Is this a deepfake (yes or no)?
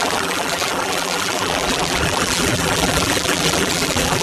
yes